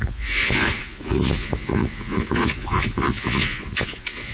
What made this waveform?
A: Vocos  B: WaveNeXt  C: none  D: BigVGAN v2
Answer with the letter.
A